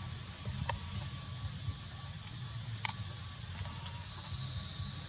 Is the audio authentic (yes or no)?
yes